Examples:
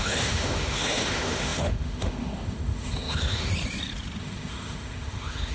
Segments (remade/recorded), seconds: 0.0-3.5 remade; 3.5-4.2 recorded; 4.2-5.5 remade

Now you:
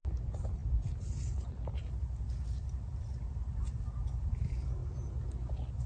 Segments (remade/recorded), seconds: 0.0-5.9 recorded

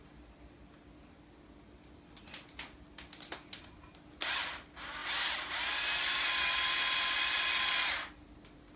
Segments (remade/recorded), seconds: 0.0-8.8 recorded

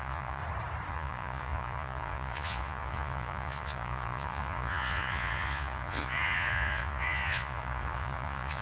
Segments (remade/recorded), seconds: 0.0-0.4 remade; 0.4-0.9 recorded; 0.9-8.6 remade

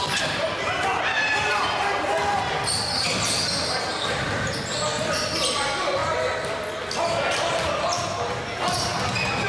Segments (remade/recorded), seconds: 0.0-9.5 recorded

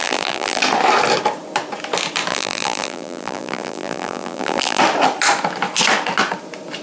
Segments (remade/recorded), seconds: 0.0-0.6 remade; 0.6-2.3 recorded; 2.3-4.8 remade; 4.8-6.8 recorded

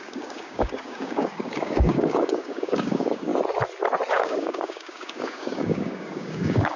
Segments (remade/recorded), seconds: 0.0-3.3 remade; 3.3-4.1 recorded; 4.1-6.8 remade

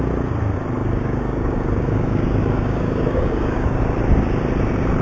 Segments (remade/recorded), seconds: 0.0-0.8 recorded; 0.8-3.8 remade; 3.8-5.0 recorded